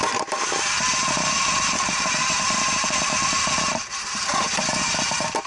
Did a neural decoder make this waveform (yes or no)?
yes